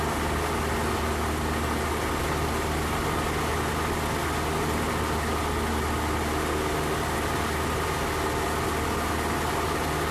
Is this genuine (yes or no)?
yes